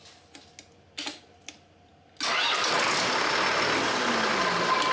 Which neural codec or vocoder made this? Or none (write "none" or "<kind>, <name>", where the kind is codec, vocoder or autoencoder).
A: none